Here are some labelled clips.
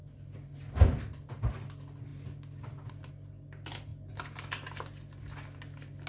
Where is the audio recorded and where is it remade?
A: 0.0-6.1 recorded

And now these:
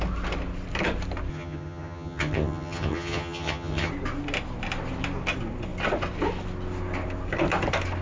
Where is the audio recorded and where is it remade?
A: 0.0-1.3 recorded; 1.3-3.9 remade; 3.9-8.0 recorded

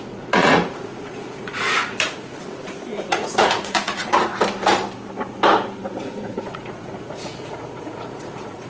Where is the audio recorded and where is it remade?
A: 0.0-4.3 remade; 4.3-6.0 recorded; 6.0-8.7 remade

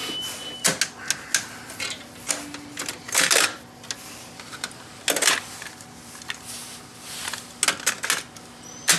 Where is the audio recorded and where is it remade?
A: 0.0-9.0 recorded

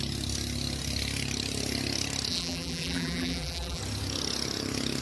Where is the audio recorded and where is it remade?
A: 0.0-2.3 recorded; 2.3-3.8 remade; 3.8-5.0 recorded

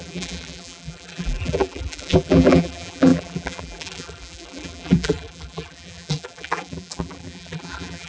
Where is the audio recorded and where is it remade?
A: 0.0-8.1 remade

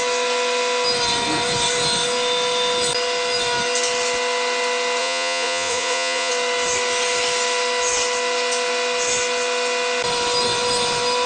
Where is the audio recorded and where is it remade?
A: 0.0-5.0 recorded; 5.0-6.3 remade; 6.3-11.3 recorded